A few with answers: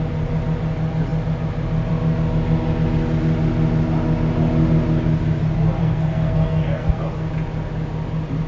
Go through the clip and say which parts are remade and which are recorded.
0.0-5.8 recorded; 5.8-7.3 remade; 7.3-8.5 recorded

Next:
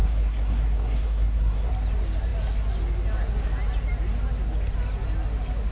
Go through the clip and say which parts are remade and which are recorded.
0.0-1.7 remade; 1.7-5.7 recorded

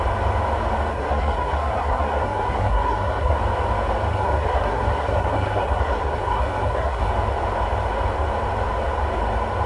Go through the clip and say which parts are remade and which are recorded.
0.0-0.9 recorded; 0.9-3.4 remade; 3.4-4.1 recorded; 4.1-7.1 remade; 7.1-9.7 recorded

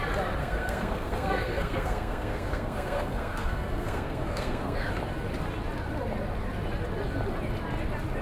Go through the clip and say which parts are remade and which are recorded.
0.0-0.4 recorded; 0.4-4.9 remade; 4.9-8.2 recorded

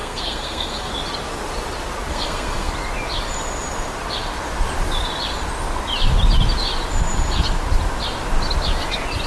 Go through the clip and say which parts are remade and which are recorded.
0.0-0.9 remade; 0.9-2.1 recorded; 2.1-2.7 remade; 2.7-9.3 recorded